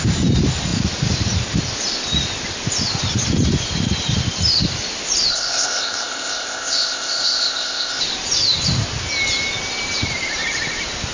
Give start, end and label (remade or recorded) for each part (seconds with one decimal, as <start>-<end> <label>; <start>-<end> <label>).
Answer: 0.0-5.3 recorded; 5.3-8.0 remade; 8.0-11.1 recorded